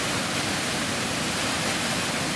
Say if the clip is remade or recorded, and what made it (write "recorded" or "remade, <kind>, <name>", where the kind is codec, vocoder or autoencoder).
remade, vocoder, BigVGAN v2